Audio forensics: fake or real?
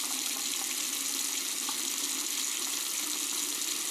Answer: real